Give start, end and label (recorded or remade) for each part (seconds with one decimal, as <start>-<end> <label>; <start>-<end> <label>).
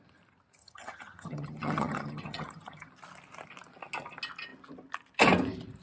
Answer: 0.0-0.6 recorded; 0.6-2.9 remade; 2.9-5.8 recorded